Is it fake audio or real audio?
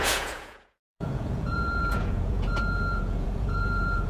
fake